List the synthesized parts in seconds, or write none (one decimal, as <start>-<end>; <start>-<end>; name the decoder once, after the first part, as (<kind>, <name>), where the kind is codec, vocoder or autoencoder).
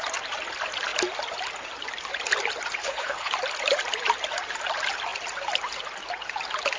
2.8-3.3 (codec, HILCodec)